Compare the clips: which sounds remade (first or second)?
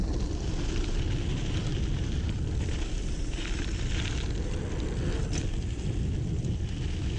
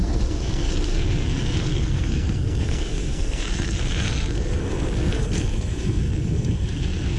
second